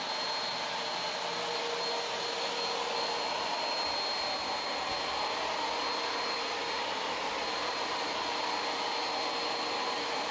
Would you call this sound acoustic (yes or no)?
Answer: yes